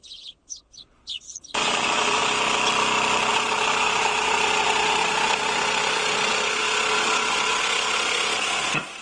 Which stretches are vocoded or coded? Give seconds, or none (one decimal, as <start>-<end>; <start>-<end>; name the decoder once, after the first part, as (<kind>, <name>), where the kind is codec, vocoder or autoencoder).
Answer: 0.0-2.2 (vocoder, Vocos); 3.3-9.0